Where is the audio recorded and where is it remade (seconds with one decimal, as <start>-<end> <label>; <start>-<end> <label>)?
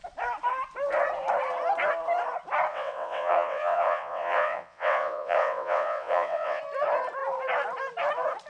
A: 0.0-2.7 recorded; 2.7-6.6 remade; 6.6-8.5 recorded